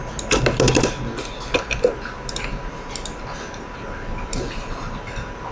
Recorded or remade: recorded